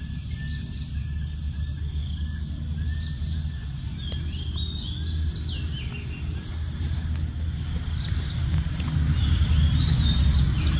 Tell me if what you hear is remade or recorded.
recorded